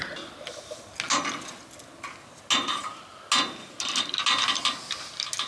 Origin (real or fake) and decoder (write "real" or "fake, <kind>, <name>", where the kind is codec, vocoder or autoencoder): real